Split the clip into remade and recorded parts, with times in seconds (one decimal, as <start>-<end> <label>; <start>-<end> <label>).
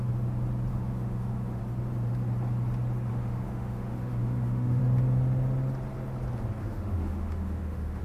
0.0-0.7 recorded; 0.7-1.6 remade; 1.6-3.1 recorded; 3.1-4.8 remade; 4.8-6.6 recorded; 6.6-8.0 remade